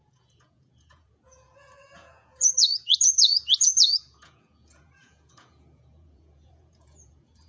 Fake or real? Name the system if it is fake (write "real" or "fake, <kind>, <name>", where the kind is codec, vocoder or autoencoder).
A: fake, vocoder, Vocos